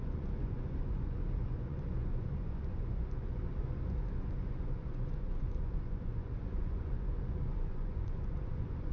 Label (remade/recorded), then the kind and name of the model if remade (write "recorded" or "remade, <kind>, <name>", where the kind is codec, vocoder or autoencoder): remade, vocoder, Vocos